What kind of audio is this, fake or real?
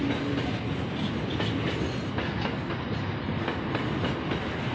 real